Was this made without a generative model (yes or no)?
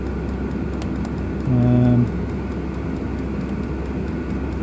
yes